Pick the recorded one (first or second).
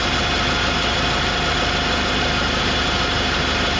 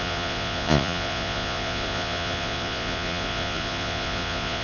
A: first